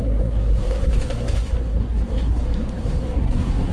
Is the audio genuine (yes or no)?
no